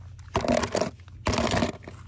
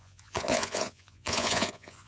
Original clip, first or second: first